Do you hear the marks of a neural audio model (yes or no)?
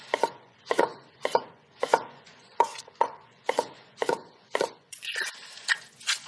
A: yes